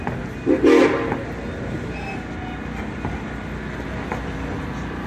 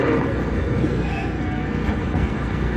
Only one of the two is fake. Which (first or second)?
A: second